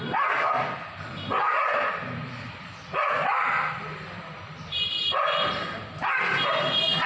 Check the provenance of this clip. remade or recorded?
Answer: recorded